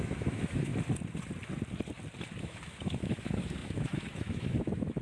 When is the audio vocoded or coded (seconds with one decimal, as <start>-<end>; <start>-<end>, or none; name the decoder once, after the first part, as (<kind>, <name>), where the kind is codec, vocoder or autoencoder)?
0.0-0.7 (autoencoder, DAC-VAE); 2.4-5.0